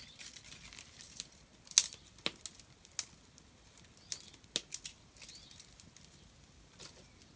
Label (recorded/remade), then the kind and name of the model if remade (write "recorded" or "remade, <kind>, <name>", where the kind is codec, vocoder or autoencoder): recorded